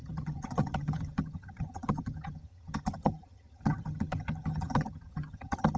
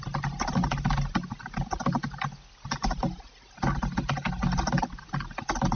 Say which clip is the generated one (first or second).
first